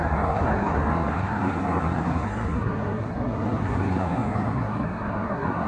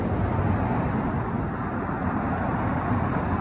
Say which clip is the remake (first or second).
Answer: first